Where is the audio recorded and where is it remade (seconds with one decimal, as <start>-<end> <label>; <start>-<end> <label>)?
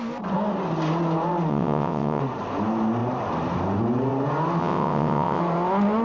0.0-1.5 recorded; 1.5-2.2 remade; 2.2-4.6 recorded; 4.6-5.4 remade; 5.4-6.0 recorded